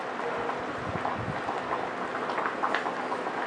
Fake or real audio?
real